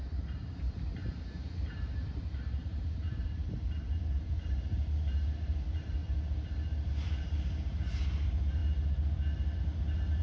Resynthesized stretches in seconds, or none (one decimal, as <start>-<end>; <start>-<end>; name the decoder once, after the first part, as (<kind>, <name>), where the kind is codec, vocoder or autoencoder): 0.0-6.0 (vocoder, BigVGAN v2); 6.9-8.6